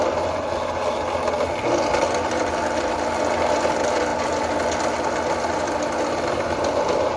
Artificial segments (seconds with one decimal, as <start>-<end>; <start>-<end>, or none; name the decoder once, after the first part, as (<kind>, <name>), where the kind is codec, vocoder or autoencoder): none